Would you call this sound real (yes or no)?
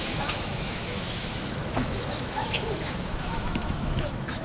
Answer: no